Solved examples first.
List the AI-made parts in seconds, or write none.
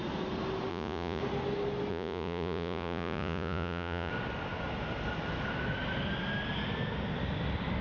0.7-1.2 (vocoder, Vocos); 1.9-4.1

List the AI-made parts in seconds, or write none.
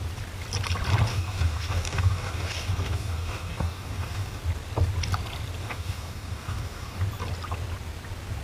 1.1-4.4 (codec, DAC); 5.6-7.0